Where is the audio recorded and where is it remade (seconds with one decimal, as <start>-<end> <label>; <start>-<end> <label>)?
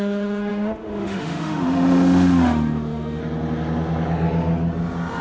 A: 0.0-3.2 remade; 3.2-5.2 recorded